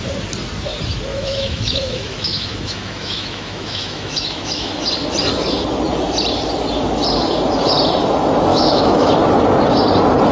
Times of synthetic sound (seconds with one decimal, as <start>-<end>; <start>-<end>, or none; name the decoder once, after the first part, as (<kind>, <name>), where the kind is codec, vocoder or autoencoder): 1.1-4.9 (autoencoder, DAC-VAE); 8.5-9.1

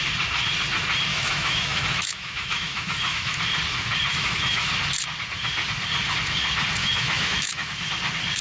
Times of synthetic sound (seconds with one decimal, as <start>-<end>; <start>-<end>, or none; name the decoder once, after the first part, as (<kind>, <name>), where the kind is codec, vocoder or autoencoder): 1.1-3.4 (autoencoder, DAC-VAE); 4.1-4.7; 6.8-7.9

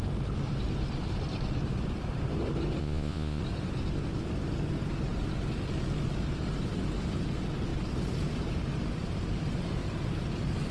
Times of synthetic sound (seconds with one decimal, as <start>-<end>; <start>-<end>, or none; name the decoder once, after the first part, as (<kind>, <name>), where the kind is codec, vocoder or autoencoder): 2.8-3.4 (vocoder, Vocos)

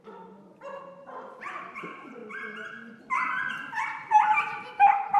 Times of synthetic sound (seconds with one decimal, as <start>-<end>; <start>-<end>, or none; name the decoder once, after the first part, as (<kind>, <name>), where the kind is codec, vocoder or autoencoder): 0.0-2.2 (vocoder, BigVGAN v2); 3.0-5.2

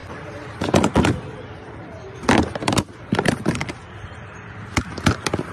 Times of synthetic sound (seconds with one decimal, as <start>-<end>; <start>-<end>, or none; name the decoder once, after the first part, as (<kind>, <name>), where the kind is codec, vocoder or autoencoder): 0.0-3.3 (vocoder, BigVGAN v2)